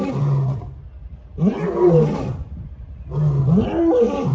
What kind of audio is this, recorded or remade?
recorded